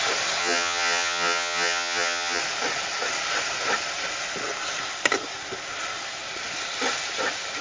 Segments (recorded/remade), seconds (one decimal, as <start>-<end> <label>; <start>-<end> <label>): 0.0-0.4 recorded; 0.4-2.4 remade; 2.4-7.6 recorded